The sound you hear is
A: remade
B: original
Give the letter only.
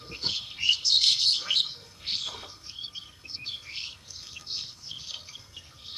A